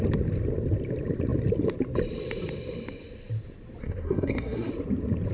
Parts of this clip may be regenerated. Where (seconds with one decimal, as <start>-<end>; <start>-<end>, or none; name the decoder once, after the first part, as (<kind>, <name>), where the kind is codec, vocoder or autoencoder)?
3.8-4.7 (codec, SNAC)